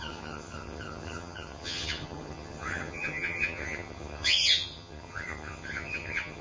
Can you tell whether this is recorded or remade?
remade